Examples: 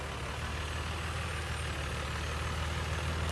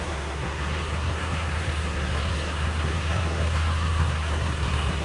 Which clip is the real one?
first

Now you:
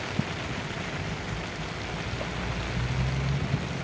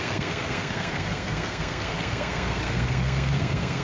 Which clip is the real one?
first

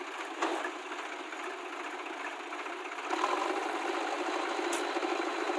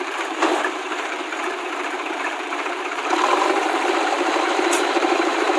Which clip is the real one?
first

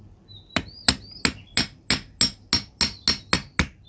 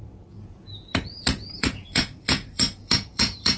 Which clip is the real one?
first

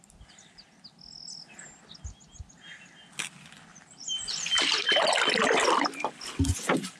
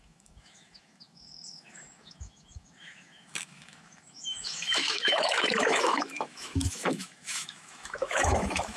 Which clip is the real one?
first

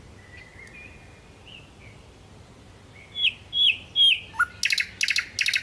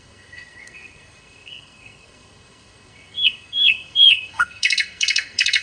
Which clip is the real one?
first